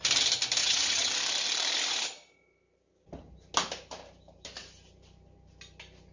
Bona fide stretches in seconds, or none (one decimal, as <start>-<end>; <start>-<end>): 0.0-0.6; 1.1-6.1